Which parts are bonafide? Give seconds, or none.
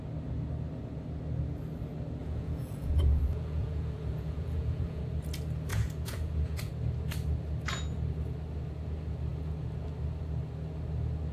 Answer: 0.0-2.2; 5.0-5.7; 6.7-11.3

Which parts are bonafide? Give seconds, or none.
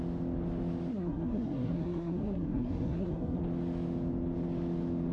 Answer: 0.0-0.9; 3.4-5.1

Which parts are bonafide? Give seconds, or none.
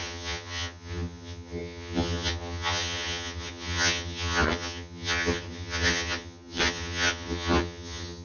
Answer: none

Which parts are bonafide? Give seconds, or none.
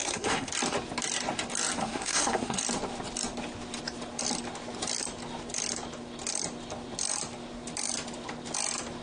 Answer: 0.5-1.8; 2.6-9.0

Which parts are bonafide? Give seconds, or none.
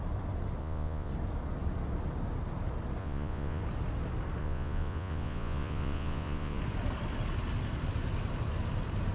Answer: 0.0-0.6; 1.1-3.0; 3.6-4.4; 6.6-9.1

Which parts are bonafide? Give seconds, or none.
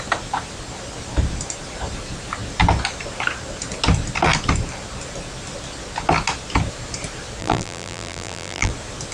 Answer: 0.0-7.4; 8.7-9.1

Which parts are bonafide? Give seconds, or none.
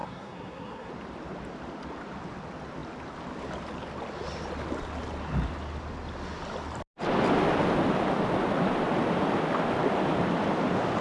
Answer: 0.9-11.0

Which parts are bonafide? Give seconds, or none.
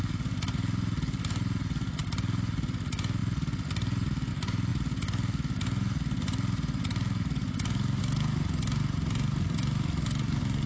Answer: 0.0-10.7